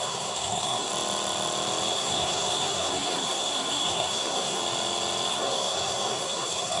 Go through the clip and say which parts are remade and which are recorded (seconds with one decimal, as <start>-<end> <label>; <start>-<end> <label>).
0.0-0.9 remade; 0.9-1.9 recorded; 1.9-4.6 remade; 4.6-5.3 recorded; 5.3-6.8 remade